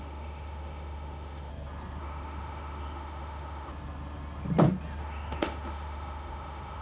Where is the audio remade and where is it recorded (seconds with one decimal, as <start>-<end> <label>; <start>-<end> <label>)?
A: 0.0-1.5 remade; 1.5-2.0 recorded; 2.0-3.7 remade; 3.7-5.0 recorded; 5.0-6.8 remade